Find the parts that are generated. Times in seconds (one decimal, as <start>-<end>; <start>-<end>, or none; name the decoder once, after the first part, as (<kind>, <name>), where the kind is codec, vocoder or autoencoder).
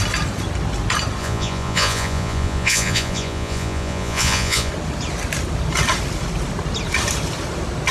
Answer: 1.2-4.7 (vocoder, Vocos)